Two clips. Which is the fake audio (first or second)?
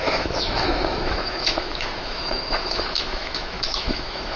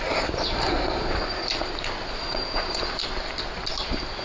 first